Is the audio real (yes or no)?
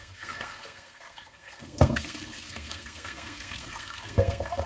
no